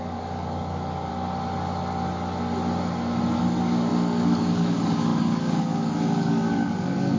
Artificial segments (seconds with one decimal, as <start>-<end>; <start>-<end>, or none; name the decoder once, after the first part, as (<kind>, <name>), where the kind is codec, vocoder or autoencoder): 0.0-1.1 (codec, DAC); 3.4-7.2